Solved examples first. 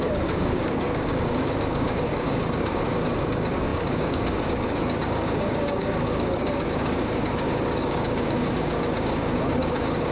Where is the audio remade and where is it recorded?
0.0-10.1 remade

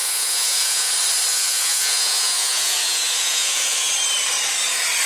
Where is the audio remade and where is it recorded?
0.0-0.9 remade; 0.9-1.3 recorded; 1.3-3.9 remade; 3.9-5.1 recorded

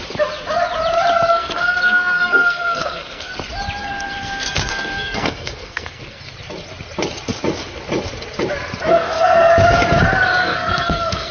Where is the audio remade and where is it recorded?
0.0-1.3 recorded; 1.3-3.3 remade; 3.3-3.8 recorded; 3.8-6.2 remade; 6.2-8.9 recorded; 8.9-9.5 remade; 9.5-10.4 recorded; 10.4-11.3 remade

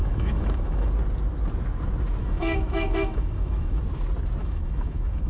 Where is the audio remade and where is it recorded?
0.0-0.9 remade; 0.9-2.2 recorded; 2.2-3.8 remade; 3.8-4.4 recorded; 4.4-5.3 remade

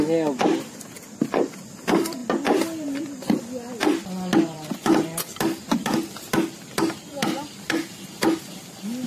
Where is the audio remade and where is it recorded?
0.0-9.1 recorded

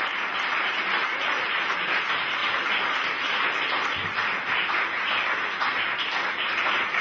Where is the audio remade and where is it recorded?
0.0-7.0 remade